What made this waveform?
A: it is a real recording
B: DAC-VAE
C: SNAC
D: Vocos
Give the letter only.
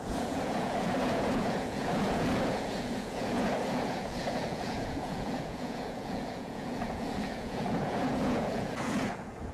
D